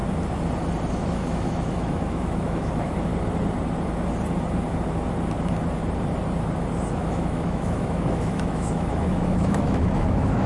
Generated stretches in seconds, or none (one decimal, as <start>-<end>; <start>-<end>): 0.9-3.1; 6.9-10.5